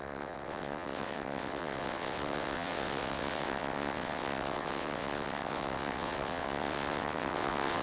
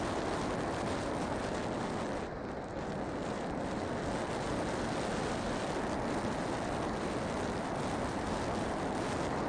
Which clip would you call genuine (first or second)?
second